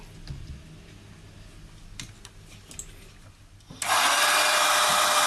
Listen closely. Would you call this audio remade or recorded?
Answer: recorded